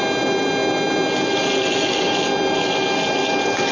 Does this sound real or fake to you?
real